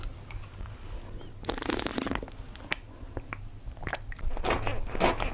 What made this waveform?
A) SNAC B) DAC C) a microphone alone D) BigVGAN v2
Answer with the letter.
C